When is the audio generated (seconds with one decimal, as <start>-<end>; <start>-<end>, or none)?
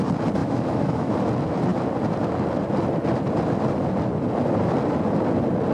0.4-1.1